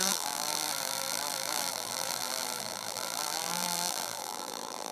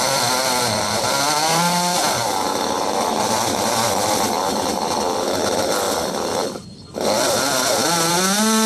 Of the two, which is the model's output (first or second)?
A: first